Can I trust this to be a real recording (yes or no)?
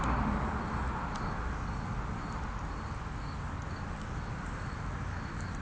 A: yes